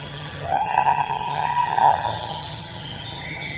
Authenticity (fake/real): fake